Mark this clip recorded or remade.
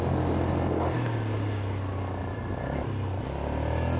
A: recorded